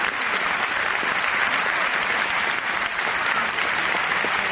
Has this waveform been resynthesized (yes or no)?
no